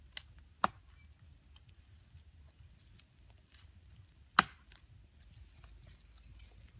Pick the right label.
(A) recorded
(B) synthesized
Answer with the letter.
A